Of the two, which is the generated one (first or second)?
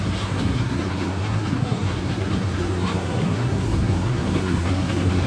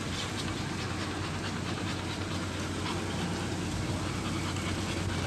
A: first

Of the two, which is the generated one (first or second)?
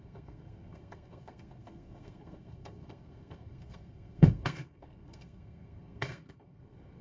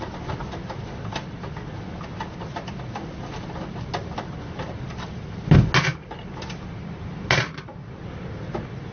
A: first